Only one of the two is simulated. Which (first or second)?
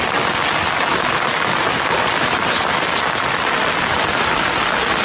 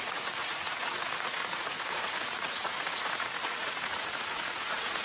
second